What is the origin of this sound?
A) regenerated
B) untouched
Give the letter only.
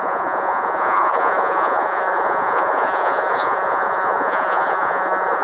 A